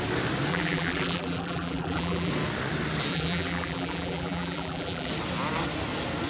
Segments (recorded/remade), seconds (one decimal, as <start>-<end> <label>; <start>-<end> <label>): 0.0-0.5 recorded; 0.5-2.3 remade; 2.3-3.1 recorded; 3.1-5.1 remade; 5.1-6.3 recorded